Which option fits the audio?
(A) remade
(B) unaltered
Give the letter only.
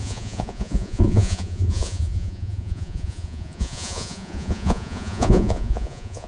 A